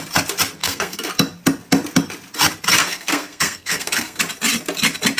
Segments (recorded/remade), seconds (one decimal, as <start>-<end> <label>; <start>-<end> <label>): 0.0-0.6 recorded; 0.6-1.1 remade; 1.1-2.8 recorded; 2.8-4.2 remade; 4.2-5.2 recorded